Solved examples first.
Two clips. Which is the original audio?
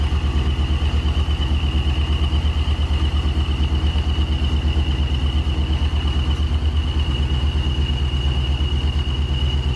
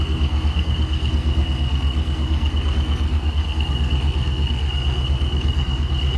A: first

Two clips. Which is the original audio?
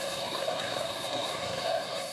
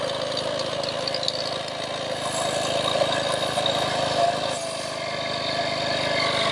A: second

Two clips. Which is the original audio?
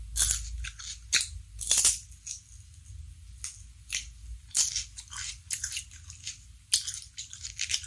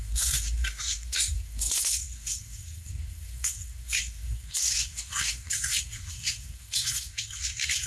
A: first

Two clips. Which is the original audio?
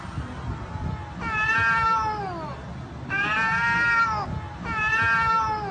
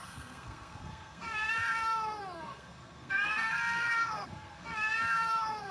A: first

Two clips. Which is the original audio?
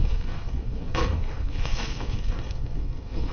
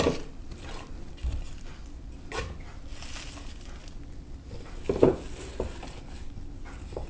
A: second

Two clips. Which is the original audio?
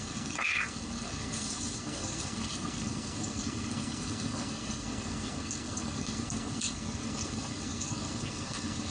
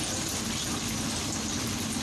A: second